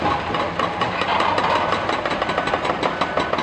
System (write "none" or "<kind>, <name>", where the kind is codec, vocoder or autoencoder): none